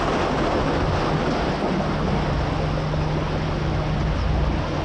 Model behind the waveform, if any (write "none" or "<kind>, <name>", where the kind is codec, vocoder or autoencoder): none